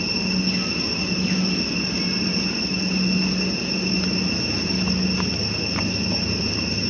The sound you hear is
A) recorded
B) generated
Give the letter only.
A